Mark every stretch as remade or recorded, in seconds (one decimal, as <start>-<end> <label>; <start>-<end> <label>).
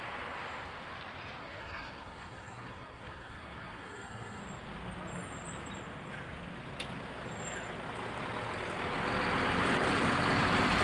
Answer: 0.0-1.4 recorded; 1.4-4.4 remade; 4.4-10.8 recorded